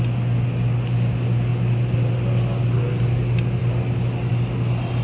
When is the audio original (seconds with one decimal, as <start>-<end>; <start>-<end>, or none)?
0.0-5.0